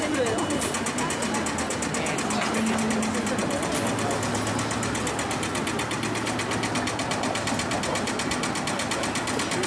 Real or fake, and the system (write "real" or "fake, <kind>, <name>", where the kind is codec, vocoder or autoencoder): real